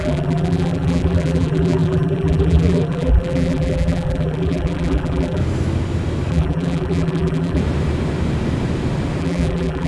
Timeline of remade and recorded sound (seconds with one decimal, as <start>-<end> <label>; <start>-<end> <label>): 0.0-5.4 remade; 5.4-6.3 recorded; 6.3-7.6 remade; 7.6-9.2 recorded; 9.2-9.9 remade